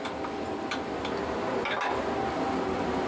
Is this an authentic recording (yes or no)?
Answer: yes